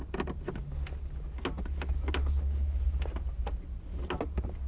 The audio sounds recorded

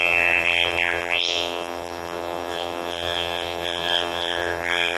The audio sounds remade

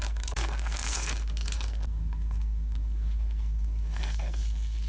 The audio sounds remade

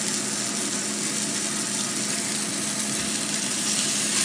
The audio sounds recorded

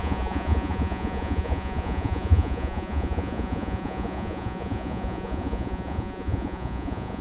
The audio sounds remade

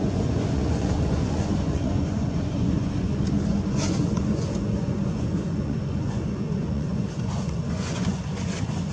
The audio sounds remade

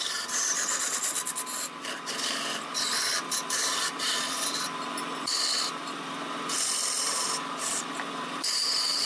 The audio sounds recorded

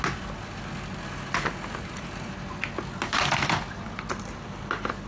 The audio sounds recorded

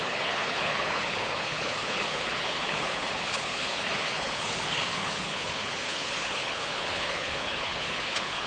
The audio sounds remade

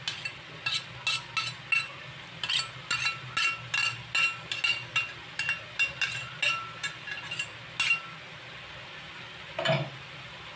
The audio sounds recorded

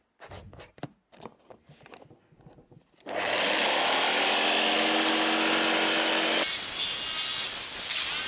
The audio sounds recorded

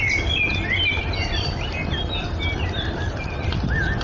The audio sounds recorded